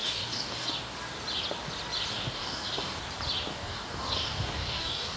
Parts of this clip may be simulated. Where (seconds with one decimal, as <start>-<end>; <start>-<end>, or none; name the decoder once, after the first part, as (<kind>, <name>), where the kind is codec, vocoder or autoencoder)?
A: 0.0-0.7 (codec, DAC); 2.1-3.0; 3.5-5.2

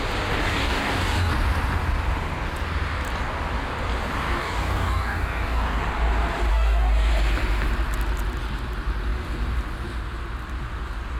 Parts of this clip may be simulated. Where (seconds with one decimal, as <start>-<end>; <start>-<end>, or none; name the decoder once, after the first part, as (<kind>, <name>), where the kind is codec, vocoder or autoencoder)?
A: 0.4-1.3 (codec, DAC); 4.4-5.8; 6.5-7.1

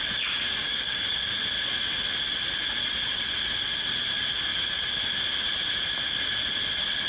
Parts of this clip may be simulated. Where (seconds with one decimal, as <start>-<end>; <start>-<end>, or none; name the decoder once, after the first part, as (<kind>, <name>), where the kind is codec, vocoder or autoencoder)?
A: 0.6-1.4 (codec, DAC)

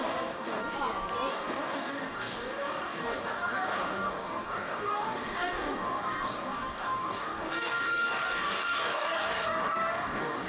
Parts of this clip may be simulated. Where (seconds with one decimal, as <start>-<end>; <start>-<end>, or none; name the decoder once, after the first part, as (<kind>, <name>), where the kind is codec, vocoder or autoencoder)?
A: 0.0-0.6 (codec, DAC); 1.3-10.5

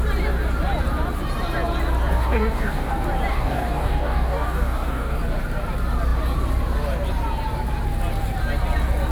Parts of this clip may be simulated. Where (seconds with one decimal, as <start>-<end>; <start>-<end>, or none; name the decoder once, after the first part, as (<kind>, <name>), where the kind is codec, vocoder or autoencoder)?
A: 2.1-2.9 (codec, DAC); 3.3-5.2

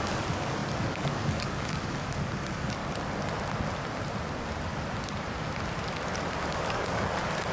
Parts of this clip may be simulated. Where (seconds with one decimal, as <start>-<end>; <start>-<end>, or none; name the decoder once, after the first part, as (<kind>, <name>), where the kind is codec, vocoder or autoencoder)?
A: 0.0-2.8 (codec, DAC); 6.4-7.5

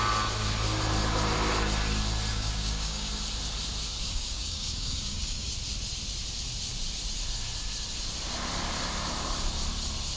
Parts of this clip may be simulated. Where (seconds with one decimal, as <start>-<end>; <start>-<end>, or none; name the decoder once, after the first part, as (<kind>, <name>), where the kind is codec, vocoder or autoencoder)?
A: 2.3-3.1 (codec, DAC); 4.0-5.5